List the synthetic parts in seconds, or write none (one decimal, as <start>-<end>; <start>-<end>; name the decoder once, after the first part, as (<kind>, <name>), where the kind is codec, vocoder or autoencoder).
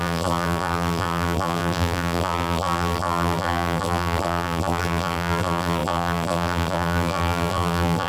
0.0-8.1 (vocoder, BigVGAN v2)